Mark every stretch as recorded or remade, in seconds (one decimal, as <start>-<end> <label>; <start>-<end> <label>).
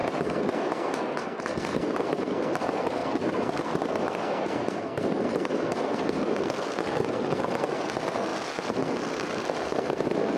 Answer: 0.0-10.4 remade